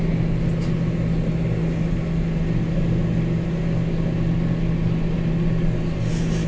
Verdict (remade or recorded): recorded